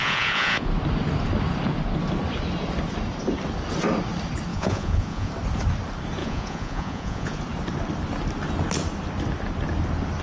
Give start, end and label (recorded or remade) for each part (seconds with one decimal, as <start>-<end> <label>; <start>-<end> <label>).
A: 0.0-0.7 remade; 0.7-4.5 recorded; 4.5-5.3 remade; 5.3-6.2 recorded; 6.2-7.4 remade; 7.4-10.2 recorded